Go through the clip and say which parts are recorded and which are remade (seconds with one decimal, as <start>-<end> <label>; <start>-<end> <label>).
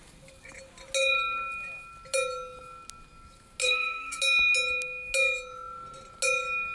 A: 0.0-3.6 recorded; 3.6-4.2 remade; 4.2-6.7 recorded